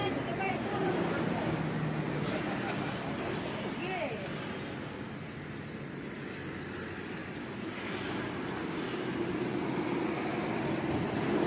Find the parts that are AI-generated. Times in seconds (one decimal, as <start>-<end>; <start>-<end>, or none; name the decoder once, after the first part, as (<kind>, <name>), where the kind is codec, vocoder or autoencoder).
none